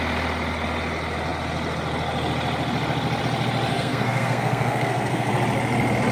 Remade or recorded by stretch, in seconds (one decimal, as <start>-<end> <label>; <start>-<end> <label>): 0.0-3.7 recorded; 3.7-5.3 remade; 5.3-6.1 recorded